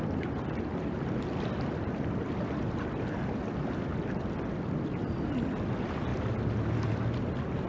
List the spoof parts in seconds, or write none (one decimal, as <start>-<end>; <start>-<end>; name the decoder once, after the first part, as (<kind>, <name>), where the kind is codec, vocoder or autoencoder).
none